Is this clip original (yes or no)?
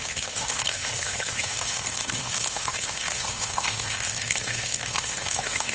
no